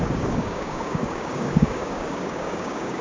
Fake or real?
fake